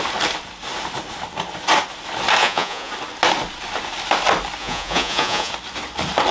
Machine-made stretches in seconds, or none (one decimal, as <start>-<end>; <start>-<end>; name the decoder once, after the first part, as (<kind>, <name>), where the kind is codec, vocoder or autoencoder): 2.4-2.9 (vocoder, Vocos); 4.6-5.5